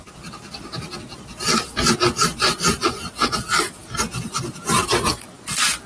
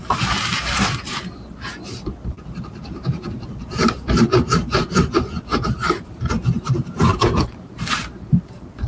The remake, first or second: second